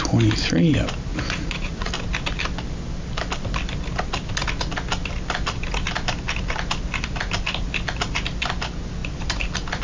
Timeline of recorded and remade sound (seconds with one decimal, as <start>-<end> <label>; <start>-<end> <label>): 0.0-1.1 recorded; 1.1-1.9 remade; 1.9-9.8 recorded